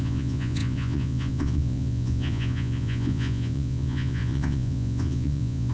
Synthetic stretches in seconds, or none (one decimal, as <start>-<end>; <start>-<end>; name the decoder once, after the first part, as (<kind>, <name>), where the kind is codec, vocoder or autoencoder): 0.0-5.7 (vocoder, Vocos)

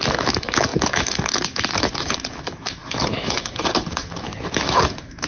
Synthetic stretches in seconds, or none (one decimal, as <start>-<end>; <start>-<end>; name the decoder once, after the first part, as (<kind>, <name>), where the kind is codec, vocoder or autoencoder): 0.0-5.3 (autoencoder, DAC-VAE)

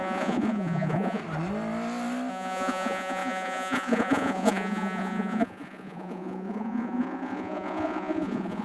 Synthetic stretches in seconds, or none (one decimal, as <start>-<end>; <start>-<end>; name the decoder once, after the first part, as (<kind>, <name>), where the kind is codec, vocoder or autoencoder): 0.0-1.2 (vocoder, Vocos); 2.3-8.6

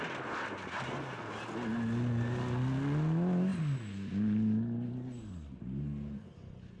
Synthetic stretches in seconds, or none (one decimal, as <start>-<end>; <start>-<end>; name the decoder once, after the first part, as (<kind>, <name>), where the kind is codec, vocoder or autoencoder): none

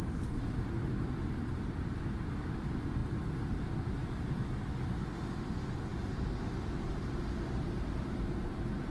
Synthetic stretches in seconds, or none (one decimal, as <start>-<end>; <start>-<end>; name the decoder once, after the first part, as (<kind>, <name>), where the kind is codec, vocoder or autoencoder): none

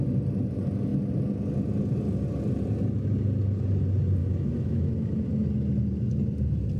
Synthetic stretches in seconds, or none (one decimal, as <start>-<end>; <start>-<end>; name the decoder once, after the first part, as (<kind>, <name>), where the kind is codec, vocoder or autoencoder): 4.2-5.5 (autoencoder, DAC-VAE)

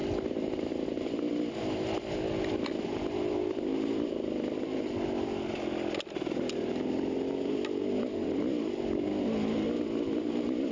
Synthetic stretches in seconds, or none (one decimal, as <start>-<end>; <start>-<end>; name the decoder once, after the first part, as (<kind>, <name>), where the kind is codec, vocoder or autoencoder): none

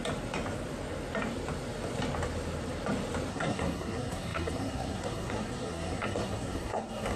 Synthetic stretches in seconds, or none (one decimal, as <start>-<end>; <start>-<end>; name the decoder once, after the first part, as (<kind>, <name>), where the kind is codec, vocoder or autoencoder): 3.3-7.2 (codec, SNAC)